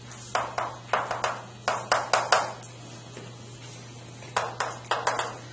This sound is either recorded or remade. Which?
recorded